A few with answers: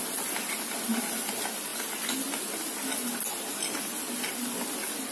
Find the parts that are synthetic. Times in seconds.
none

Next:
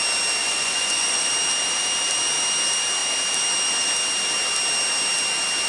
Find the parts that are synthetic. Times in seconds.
0.4-1.3 (vocoder, Vocos)

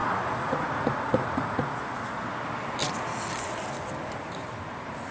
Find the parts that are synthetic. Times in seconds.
0.0-2.0 (vocoder, Vocos)

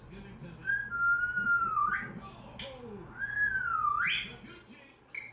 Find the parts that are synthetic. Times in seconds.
none

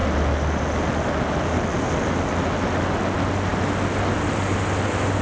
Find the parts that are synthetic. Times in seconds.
none

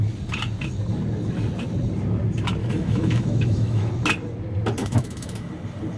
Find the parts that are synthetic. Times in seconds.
2.6-3.9 (autoencoder, DAC-VAE); 4.8-5.5